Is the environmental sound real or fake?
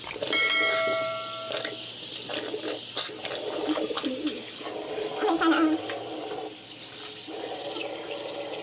fake